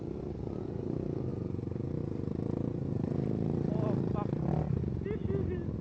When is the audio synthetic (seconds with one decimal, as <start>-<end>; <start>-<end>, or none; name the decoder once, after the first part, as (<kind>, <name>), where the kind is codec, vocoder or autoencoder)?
none